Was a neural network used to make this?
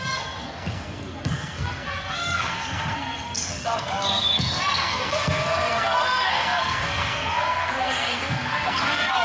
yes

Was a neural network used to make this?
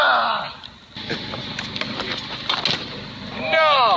no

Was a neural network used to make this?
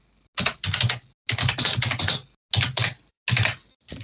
no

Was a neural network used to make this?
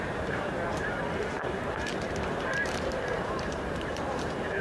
yes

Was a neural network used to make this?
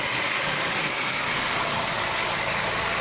yes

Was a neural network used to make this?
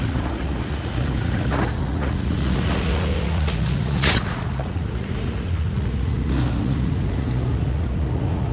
yes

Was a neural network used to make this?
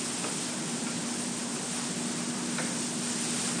no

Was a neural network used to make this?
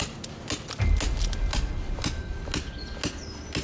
no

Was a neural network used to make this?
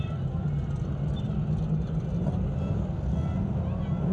no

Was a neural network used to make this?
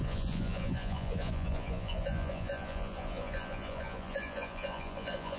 yes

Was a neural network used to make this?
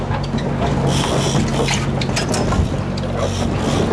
no